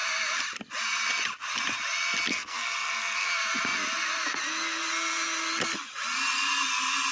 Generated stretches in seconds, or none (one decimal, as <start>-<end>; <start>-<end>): 2.3-3.3